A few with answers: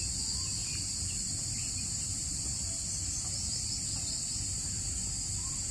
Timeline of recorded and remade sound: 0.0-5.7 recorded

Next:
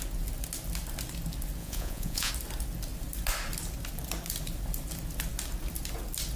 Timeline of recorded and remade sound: 0.0-1.6 recorded; 1.6-2.3 remade; 2.3-6.4 recorded

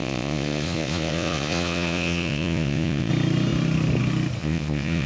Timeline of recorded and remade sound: 0.0-3.1 remade; 3.1-4.4 recorded; 4.4-5.1 remade

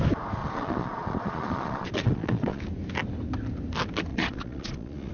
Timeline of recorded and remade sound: 0.0-0.4 recorded; 0.4-2.6 remade; 2.6-4.1 recorded; 4.1-5.1 remade